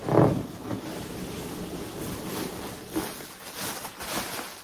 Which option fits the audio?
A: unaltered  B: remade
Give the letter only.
A